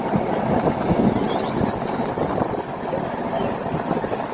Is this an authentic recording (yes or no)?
yes